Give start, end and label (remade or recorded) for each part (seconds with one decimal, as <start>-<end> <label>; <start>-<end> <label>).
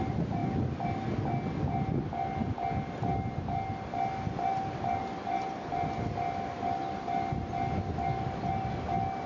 0.0-9.3 recorded